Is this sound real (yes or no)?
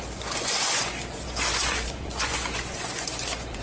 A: no